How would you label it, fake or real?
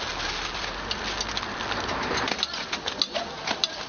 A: real